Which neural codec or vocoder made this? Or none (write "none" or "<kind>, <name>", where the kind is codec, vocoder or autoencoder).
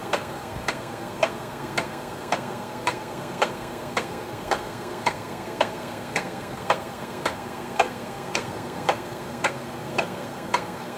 codec, SNAC